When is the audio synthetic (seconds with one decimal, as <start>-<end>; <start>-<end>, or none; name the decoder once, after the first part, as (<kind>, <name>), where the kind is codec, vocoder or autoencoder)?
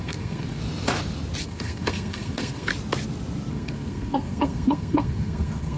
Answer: 0.0-0.6 (codec, SNAC); 1.4-2.7; 3.5-5.8